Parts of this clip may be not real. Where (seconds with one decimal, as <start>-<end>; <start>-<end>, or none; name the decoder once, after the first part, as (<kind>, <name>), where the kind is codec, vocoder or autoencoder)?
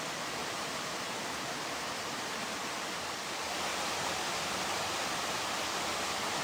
0.4-1.1 (vocoder, BigVGAN v2); 2.6-3.1; 3.7-4.2